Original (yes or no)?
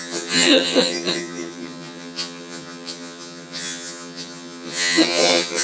no